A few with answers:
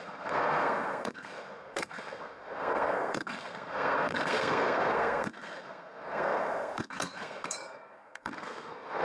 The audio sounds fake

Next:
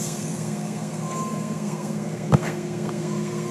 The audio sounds fake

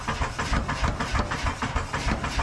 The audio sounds real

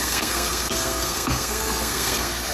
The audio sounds fake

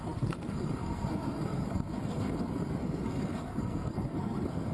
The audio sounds fake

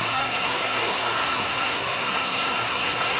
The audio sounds fake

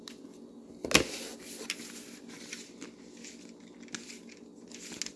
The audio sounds real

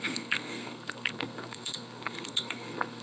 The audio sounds fake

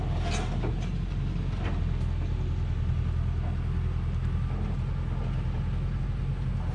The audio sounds real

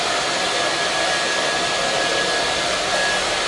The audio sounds real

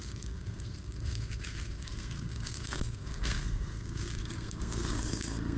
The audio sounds fake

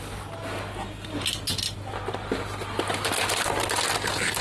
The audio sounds real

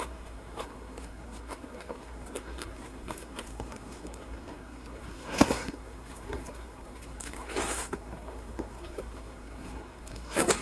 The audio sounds fake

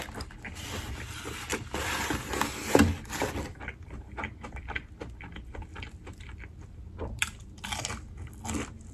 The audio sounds real